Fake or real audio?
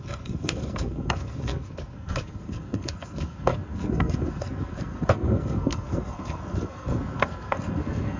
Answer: fake